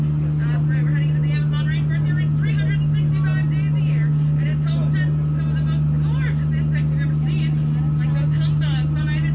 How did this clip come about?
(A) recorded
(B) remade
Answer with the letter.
A